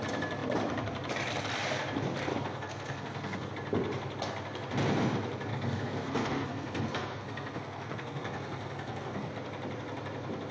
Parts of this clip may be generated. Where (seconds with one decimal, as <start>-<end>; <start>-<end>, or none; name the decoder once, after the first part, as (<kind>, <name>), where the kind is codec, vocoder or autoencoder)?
2.3-3.5 (codec, SNAC); 5.5-9.3